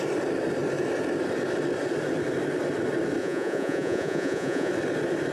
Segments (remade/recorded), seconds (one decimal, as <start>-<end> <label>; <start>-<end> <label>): 0.0-3.2 recorded; 3.2-4.7 remade; 4.7-5.3 recorded